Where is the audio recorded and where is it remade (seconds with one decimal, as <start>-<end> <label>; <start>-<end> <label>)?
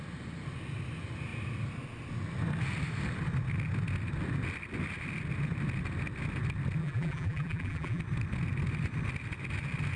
0.0-6.8 recorded; 6.8-8.0 remade; 8.0-10.0 recorded